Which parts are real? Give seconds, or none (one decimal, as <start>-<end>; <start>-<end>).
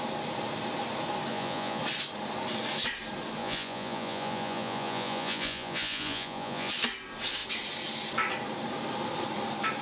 0.0-1.3; 1.8-3.4; 6.7-9.8